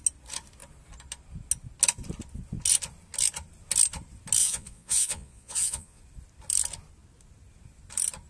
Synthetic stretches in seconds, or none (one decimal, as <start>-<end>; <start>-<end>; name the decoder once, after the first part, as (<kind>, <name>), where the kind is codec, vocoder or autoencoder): 4.4-6.0 (vocoder, Vocos)